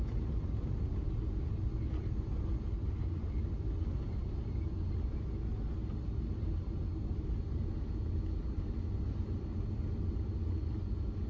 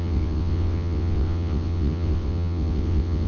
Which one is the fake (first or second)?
second